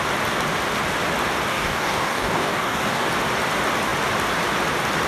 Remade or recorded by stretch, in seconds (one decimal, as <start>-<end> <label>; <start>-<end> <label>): 0.0-1.5 recorded; 1.5-3.1 remade; 3.1-5.1 recorded